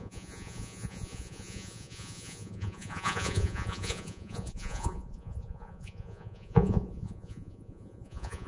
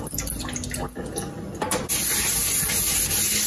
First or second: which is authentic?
second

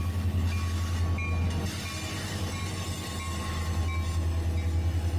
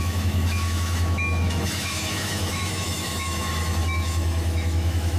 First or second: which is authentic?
first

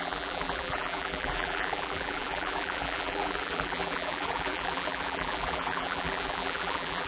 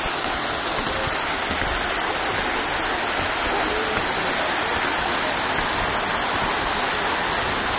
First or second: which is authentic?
second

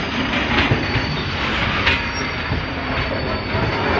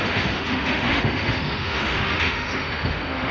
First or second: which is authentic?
first